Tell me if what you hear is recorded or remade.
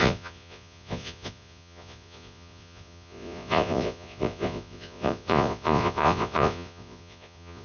remade